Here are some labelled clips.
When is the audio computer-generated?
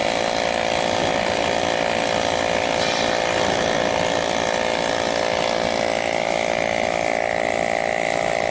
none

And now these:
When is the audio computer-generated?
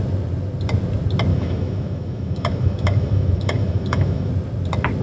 1.3-4.3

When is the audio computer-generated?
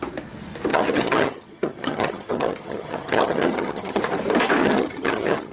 0.7-4.0; 4.6-5.5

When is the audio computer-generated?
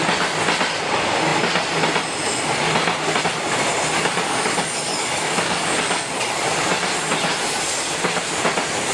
4.0-6.8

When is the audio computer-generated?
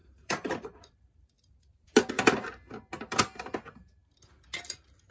0.0-2.1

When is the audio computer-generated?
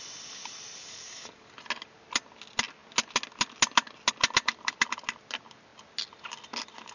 0.8-1.5